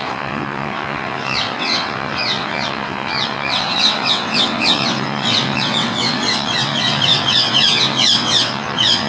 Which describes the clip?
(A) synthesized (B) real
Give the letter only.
A